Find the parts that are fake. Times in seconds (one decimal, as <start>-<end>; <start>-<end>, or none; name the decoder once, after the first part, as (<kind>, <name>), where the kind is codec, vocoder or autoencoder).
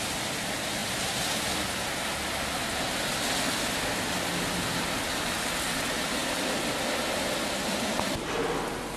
none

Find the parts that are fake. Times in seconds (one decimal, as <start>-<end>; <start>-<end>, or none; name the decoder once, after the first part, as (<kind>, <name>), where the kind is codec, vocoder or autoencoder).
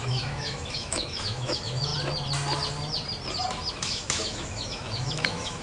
0.0-1.9 (autoencoder, DAC-VAE); 3.7-5.6